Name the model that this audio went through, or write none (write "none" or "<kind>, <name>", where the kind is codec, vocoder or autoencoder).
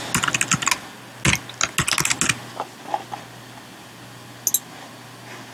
none